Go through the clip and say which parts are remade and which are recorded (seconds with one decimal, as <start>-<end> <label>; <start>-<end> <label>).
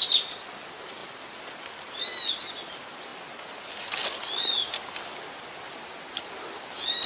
0.0-7.1 recorded